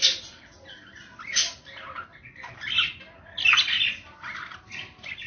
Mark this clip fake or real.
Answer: real